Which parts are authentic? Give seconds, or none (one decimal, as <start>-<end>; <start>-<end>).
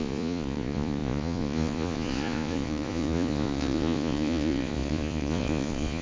none